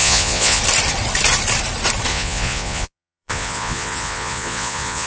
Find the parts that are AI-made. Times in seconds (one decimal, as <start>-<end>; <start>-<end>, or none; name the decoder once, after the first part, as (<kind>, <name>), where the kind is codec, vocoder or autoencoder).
0.0-0.6 (vocoder, Vocos); 2.1-5.1

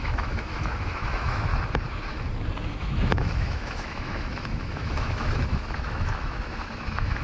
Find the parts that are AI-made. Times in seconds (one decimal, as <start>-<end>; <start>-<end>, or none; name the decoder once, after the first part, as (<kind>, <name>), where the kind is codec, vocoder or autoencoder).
0.0-1.5 (autoencoder, DAC-VAE); 2.6-7.2

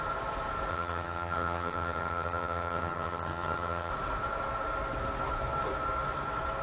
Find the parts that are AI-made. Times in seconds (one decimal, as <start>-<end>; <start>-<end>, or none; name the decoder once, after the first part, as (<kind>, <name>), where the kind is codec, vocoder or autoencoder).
0.7-3.9 (vocoder, HiFi-GAN)

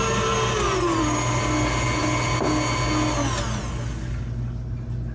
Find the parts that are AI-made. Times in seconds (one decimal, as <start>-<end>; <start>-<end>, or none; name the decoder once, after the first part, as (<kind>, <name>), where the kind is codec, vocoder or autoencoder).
none

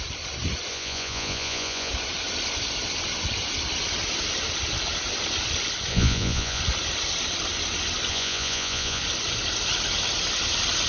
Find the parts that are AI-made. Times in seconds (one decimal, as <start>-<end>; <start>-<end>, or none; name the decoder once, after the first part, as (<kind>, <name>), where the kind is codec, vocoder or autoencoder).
0.7-1.9 (vocoder, Vocos); 5.9-6.6; 8.1-9.0

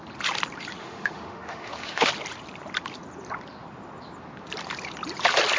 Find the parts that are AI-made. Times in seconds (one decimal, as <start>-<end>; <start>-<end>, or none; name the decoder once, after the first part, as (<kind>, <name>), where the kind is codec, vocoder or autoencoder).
0.8-2.1 (autoencoder, DAC-VAE)

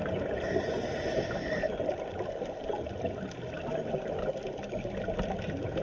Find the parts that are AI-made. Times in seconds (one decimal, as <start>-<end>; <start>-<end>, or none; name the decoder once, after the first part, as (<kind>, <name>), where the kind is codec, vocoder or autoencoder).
1.7-3.2 (vocoder, BigVGAN v2)

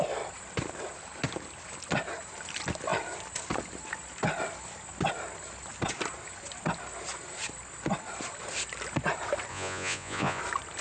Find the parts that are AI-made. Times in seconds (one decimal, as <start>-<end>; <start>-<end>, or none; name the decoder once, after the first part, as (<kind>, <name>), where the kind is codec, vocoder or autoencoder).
9.5-10.4 (vocoder, Vocos)